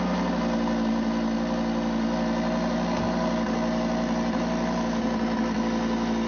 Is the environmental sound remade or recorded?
recorded